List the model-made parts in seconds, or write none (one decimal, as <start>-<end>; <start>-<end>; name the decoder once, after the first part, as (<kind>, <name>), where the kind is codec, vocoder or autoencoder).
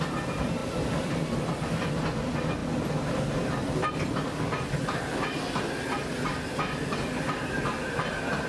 0.6-1.5 (vocoder, BigVGAN v2)